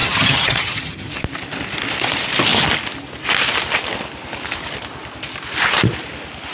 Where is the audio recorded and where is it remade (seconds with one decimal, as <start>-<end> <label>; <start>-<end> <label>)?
0.0-1.1 remade; 1.1-6.5 recorded